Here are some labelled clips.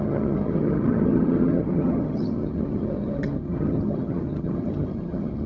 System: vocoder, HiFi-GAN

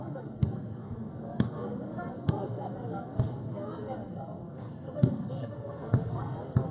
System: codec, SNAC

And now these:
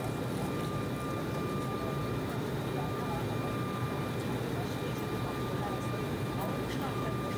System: none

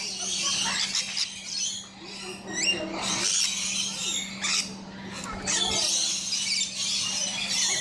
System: none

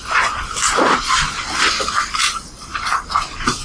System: none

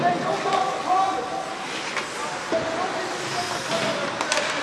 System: none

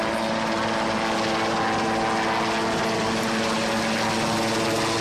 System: none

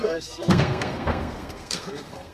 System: codec, SNAC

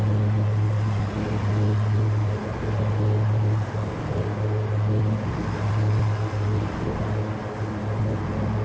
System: none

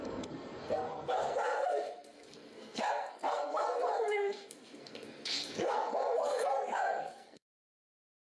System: codec, SNAC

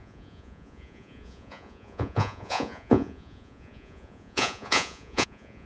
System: vocoder, Vocos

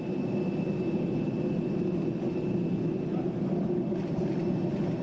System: none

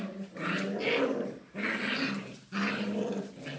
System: none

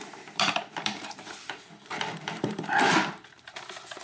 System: vocoder, BigVGAN v2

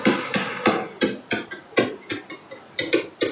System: none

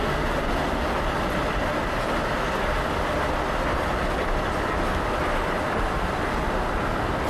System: none